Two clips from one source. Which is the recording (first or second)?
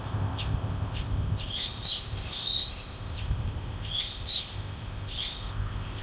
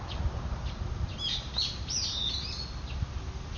second